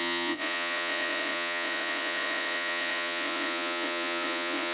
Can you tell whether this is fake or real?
fake